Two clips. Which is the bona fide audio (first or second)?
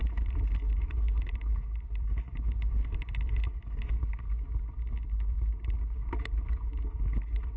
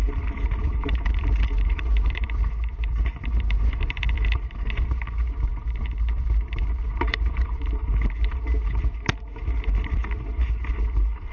first